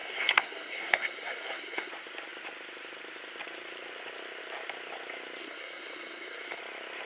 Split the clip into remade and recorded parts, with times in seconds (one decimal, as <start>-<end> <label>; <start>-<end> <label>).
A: 0.0-1.9 remade; 1.9-5.4 recorded; 5.4-6.6 remade; 6.6-7.0 recorded